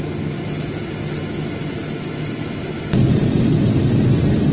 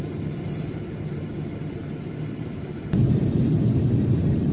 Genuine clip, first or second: first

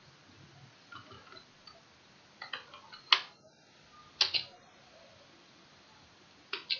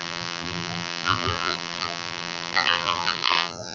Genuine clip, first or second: first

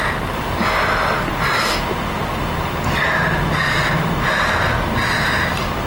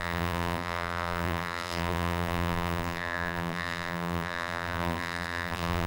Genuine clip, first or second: first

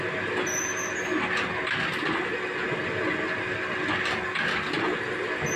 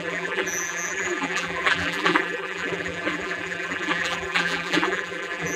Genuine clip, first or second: first